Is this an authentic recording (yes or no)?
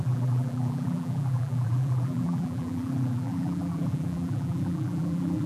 no